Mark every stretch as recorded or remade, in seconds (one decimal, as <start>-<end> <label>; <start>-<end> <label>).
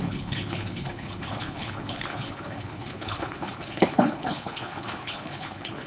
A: 0.0-5.9 remade